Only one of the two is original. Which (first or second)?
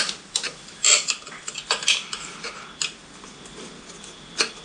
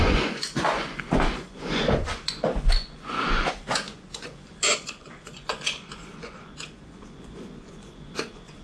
first